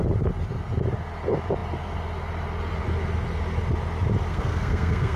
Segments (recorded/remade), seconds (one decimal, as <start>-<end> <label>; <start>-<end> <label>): 0.0-4.3 recorded; 4.3-5.2 remade